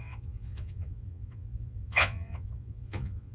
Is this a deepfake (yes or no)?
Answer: yes